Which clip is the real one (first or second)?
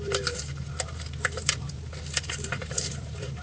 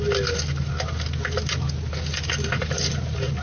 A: second